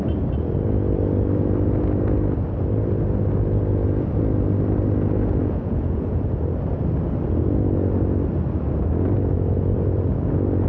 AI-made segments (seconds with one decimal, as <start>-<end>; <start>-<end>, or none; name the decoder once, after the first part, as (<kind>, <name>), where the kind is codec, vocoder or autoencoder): 5.4-6.3 (vocoder, Vocos)